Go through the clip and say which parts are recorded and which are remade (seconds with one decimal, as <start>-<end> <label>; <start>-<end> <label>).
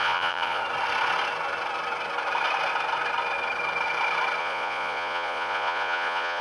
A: 0.0-0.6 remade; 0.6-4.4 recorded; 4.4-6.4 remade